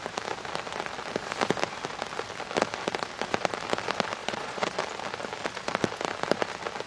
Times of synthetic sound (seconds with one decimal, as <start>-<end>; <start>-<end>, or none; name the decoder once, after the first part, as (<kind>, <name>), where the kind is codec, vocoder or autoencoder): 4.2-4.8 (vocoder, Vocos)